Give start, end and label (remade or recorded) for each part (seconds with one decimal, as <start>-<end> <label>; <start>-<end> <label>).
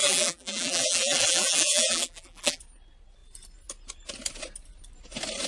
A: 0.0-2.6 remade; 2.6-5.5 recorded